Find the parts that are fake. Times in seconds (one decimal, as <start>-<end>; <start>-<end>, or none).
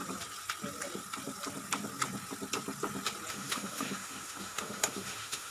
3.3-5.5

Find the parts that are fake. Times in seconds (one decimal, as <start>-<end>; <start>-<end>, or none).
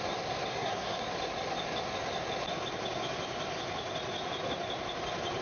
0.5-1.0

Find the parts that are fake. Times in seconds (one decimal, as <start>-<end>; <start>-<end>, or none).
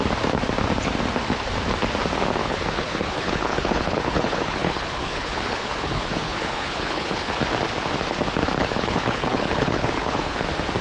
2.4-7.4; 8.6-10.4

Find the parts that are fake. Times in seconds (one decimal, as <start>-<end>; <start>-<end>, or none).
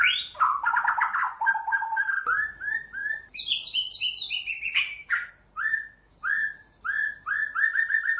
5.7-6.2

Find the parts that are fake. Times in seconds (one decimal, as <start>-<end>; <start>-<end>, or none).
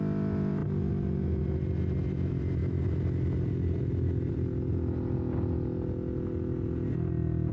none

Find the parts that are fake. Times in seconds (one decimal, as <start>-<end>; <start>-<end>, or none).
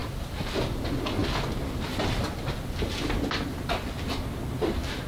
none